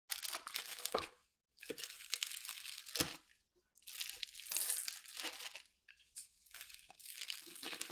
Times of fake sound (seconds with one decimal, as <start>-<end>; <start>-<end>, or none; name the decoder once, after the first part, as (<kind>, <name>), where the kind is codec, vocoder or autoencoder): 0.5-2.8 (codec, SNAC); 5.9-7.9